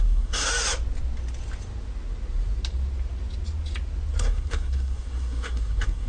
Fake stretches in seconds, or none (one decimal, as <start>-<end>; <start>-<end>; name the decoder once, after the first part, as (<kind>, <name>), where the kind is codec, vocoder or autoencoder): 0.0-0.5 (codec, SNAC); 4.2-6.1